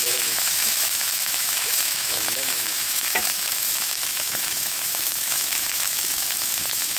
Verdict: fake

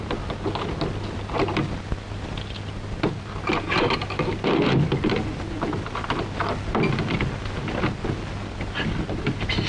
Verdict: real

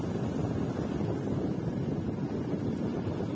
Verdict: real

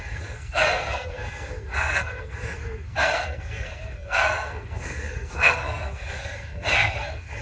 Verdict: fake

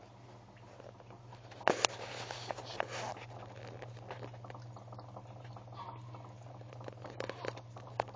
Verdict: real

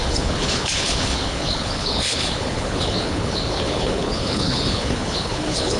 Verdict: fake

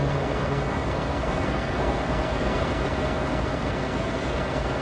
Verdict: fake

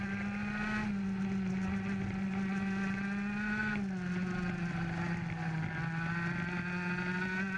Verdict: real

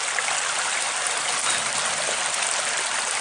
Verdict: real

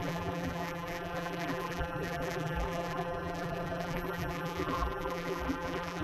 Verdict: fake